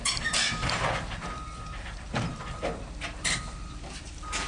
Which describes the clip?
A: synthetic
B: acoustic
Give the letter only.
A